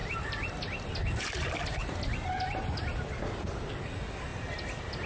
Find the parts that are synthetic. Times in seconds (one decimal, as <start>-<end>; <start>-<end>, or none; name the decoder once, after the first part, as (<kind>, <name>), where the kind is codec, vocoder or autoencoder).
0.0-0.5 (vocoder, BigVGAN v2); 1.8-3.7